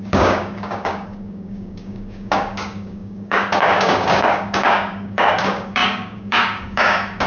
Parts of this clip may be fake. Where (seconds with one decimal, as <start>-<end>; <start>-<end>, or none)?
0.0-7.3

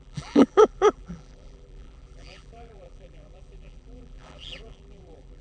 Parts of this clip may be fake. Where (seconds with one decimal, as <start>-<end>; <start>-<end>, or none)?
0.0-5.4

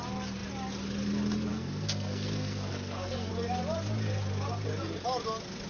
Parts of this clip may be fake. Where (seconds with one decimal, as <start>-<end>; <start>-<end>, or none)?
1.5-3.3

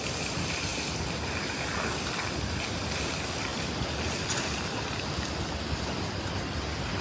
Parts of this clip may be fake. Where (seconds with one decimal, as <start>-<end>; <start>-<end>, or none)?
none

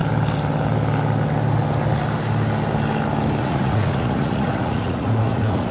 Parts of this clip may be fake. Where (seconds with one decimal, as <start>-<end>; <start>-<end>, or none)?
3.4-5.7